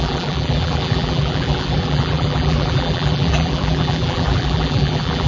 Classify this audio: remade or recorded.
remade